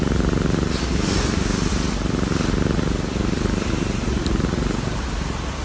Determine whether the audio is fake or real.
real